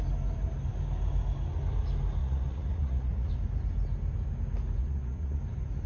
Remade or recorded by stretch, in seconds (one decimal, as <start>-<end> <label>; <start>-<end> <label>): 0.0-2.2 recorded; 2.2-3.3 remade; 3.3-4.8 recorded; 4.8-5.4 remade; 5.4-5.9 recorded